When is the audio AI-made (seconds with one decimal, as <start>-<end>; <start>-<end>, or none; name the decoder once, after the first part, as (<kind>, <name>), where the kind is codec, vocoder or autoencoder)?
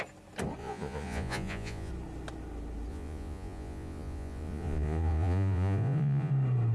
0.6-1.9 (vocoder, Vocos); 2.9-6.3